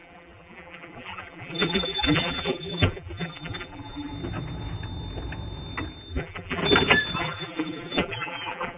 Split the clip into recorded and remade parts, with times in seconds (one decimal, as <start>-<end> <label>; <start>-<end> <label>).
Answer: 0.0-4.1 remade; 4.1-6.1 recorded; 6.1-6.6 remade; 6.6-7.2 recorded; 7.2-8.8 remade